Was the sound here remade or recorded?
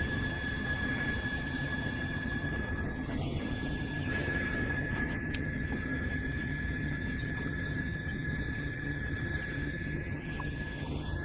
remade